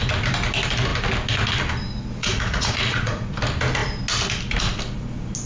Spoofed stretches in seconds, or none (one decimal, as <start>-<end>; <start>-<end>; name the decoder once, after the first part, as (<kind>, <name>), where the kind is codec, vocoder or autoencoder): 2.2-3.4 (vocoder, Vocos)